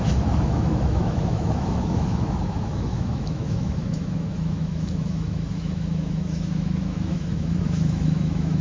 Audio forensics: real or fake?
fake